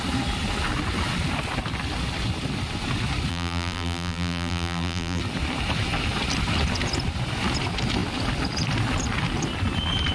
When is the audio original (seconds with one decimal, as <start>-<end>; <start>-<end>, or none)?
0.0-3.3; 5.2-10.1